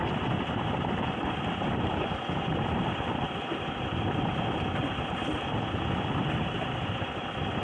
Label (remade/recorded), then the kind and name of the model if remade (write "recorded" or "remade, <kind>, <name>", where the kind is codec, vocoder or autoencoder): recorded